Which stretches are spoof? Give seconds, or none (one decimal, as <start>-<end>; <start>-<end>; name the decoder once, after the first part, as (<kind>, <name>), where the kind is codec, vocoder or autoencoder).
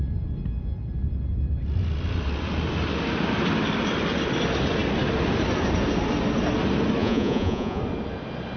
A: 7.0-7.8 (vocoder, Vocos)